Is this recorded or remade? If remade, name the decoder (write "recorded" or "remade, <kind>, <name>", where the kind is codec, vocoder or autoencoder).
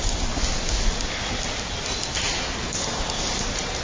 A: recorded